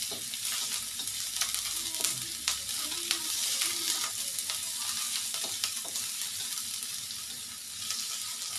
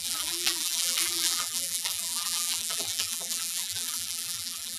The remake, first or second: second